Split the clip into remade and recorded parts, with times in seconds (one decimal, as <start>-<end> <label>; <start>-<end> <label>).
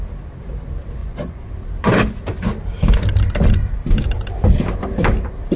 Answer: 0.0-1.0 recorded; 1.0-1.5 remade; 1.5-5.6 recorded